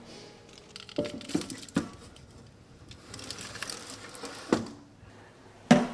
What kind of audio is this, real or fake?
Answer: real